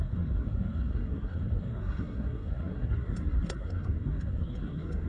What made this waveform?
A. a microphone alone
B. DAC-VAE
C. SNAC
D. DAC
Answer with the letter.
C